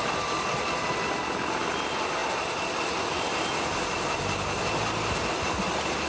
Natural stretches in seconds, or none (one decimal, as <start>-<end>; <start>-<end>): 0.0-6.1